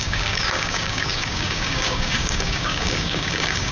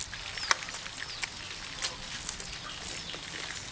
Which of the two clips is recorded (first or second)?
second